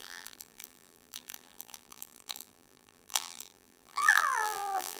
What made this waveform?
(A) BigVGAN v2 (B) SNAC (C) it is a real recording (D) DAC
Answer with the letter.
A